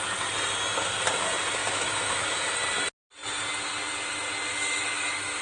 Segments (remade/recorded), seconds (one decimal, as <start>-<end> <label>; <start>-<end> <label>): 0.0-1.6 recorded; 1.6-2.5 remade; 2.5-4.5 recorded; 4.5-5.4 remade